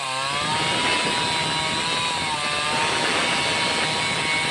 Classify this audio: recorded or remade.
recorded